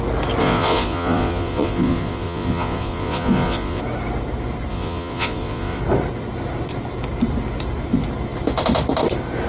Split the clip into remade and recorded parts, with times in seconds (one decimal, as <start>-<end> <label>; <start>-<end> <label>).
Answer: 0.0-0.4 recorded; 0.4-3.8 remade; 3.8-4.7 recorded; 4.7-5.8 remade; 5.8-9.5 recorded

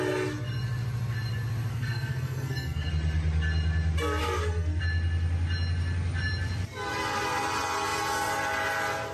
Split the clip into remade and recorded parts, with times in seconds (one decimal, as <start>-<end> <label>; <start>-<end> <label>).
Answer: 0.0-1.7 recorded; 1.7-2.9 remade; 2.9-4.2 recorded; 4.2-4.8 remade; 4.8-9.1 recorded

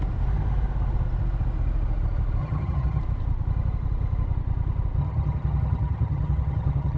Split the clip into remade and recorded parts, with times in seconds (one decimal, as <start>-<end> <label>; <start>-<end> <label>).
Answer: 0.0-2.4 recorded; 2.4-3.0 remade; 3.0-5.0 recorded; 5.0-7.0 remade

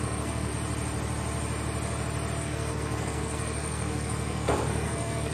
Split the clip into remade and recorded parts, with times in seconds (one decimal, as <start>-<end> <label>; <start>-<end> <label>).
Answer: 0.0-0.5 remade; 0.5-2.4 recorded; 2.4-5.3 remade

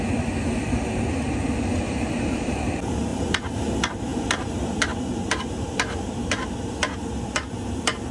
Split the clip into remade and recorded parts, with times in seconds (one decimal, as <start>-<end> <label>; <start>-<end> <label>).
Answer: 0.0-1.7 recorded; 1.7-2.7 remade; 2.7-3.1 recorded; 3.1-3.6 remade; 3.6-4.1 recorded; 4.1-6.7 remade; 6.7-8.1 recorded